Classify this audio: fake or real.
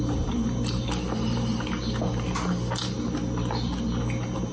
real